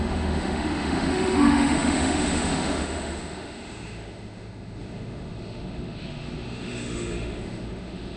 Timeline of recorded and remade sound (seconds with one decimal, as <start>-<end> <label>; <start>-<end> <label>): 0.0-8.2 remade